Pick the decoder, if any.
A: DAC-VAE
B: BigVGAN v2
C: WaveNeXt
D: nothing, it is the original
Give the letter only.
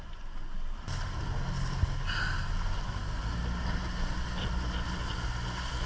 D